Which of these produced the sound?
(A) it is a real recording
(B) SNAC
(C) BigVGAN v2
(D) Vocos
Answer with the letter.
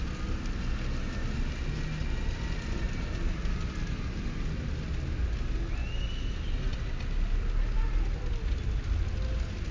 A